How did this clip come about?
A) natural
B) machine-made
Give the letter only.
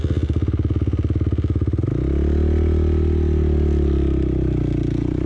A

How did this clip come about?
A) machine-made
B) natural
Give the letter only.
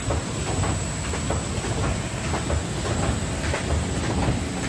B